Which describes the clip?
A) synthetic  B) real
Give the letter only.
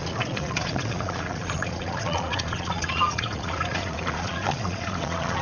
A